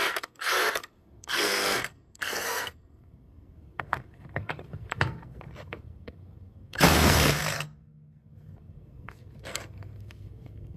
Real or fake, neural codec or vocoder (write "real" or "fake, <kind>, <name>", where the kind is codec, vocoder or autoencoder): fake, codec, SNAC